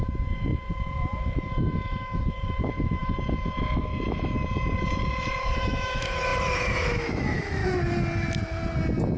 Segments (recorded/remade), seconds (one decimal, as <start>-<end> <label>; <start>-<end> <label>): 0.0-7.6 remade; 7.6-9.2 recorded